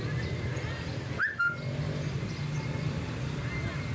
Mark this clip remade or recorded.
recorded